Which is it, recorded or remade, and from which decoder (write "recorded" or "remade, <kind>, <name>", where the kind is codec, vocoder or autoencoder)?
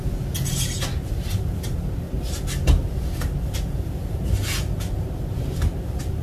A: recorded